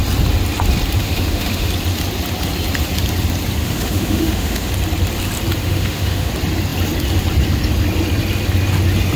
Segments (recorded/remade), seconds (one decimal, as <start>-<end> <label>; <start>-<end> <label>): 0.0-1.0 recorded; 1.0-1.7 remade; 1.7-3.6 recorded; 3.6-4.7 remade; 4.7-5.6 recorded; 5.6-6.3 remade; 6.3-9.2 recorded